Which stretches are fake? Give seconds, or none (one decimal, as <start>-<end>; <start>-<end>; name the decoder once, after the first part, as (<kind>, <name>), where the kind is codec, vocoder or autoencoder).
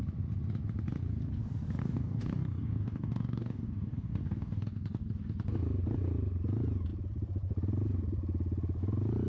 1.8-5.0 (codec, DAC)